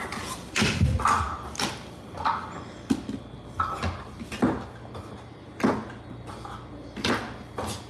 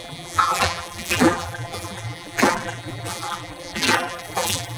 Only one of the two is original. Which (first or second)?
first